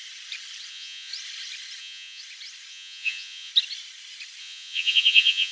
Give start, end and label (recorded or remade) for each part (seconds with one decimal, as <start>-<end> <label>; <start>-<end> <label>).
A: 0.0-0.7 recorded; 0.7-1.1 remade; 1.1-1.8 recorded; 1.8-2.2 remade; 2.2-2.7 recorded; 2.7-3.5 remade; 3.5-4.4 recorded; 4.4-5.5 remade